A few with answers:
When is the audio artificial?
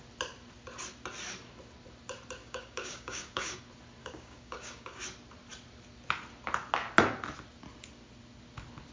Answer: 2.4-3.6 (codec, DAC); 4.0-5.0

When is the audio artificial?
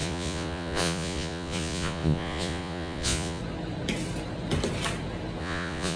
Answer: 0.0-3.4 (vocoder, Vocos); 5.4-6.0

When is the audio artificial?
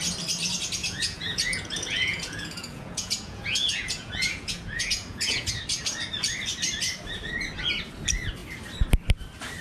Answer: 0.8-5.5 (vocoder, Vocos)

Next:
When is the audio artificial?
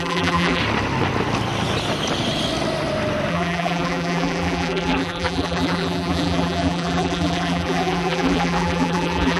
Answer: 0.0-0.6 (vocoder, BigVGAN v2); 3.3-9.4